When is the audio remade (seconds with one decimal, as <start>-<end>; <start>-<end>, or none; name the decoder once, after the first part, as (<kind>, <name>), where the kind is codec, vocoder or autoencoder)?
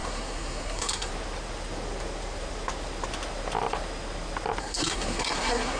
0.0-1.1 (codec, SNAC); 4.6-5.8